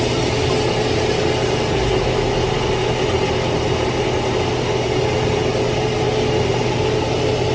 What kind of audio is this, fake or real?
real